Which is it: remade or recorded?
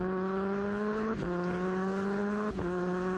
remade